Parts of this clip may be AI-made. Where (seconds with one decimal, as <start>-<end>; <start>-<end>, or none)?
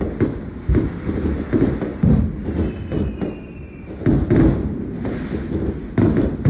none